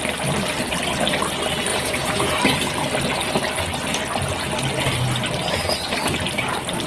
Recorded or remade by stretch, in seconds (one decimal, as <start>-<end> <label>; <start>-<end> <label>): 0.0-1.7 recorded; 1.7-2.4 remade; 2.4-6.9 recorded